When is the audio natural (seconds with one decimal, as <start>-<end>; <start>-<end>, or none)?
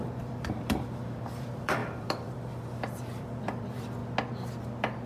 4.0-5.1